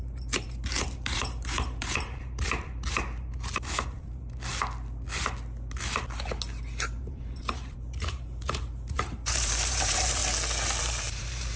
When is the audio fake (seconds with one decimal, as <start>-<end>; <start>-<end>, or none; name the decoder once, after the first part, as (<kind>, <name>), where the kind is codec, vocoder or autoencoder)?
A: 0.0-4.5 (vocoder, BigVGAN v2); 7.0-10.2; 10.8-11.6